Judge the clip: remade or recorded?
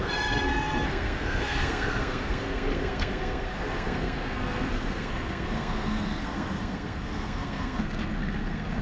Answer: remade